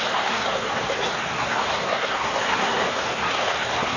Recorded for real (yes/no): no